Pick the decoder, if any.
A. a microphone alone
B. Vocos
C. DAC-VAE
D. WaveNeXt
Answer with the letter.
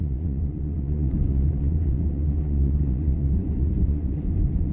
B